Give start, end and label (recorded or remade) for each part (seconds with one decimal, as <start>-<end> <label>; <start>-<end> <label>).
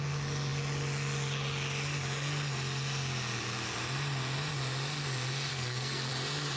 0.0-5.5 recorded; 5.5-6.1 remade; 6.1-6.6 recorded